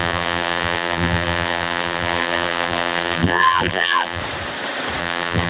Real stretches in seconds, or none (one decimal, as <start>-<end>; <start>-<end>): 4.2-5.0